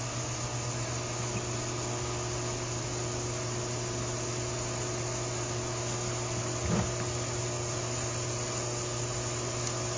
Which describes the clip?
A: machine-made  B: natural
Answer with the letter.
B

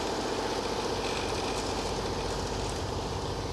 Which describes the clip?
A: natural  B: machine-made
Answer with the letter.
A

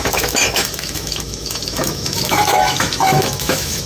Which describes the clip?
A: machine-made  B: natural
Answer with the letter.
A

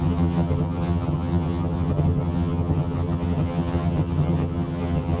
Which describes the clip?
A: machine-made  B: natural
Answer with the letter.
A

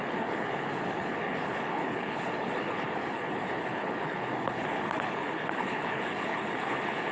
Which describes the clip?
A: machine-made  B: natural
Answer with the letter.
A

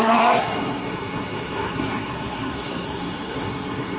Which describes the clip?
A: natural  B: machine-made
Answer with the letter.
B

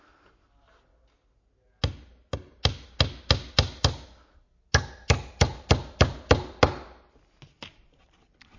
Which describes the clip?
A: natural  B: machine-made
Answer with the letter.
A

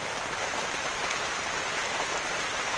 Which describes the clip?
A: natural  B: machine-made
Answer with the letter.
B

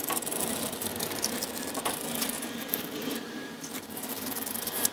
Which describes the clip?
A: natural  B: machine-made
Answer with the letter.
B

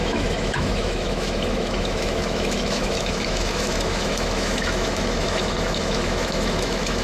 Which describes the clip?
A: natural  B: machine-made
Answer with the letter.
B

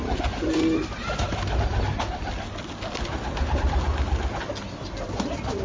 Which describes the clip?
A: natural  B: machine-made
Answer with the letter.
A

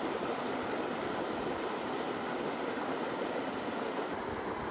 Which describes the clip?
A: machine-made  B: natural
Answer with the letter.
B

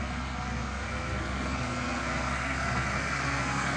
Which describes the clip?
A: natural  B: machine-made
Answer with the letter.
B